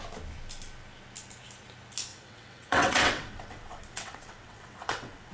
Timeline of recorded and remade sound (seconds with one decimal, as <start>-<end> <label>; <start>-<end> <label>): 0.0-2.1 recorded; 2.1-5.3 remade